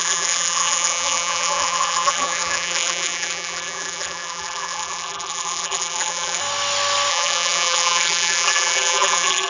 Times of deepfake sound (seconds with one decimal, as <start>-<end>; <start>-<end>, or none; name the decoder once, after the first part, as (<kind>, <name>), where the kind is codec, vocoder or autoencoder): 0.0-6.4 (vocoder, BigVGAN v2); 7.1-9.5